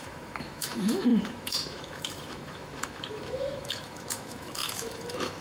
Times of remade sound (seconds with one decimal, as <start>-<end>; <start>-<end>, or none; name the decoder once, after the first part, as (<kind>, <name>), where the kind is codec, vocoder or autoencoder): 0.0-5.4 (autoencoder, DAC-VAE)